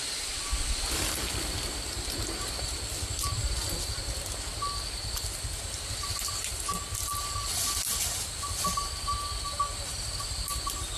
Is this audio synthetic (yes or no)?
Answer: no